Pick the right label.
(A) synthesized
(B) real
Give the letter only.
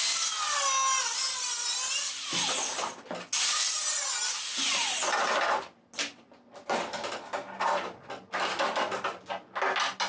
B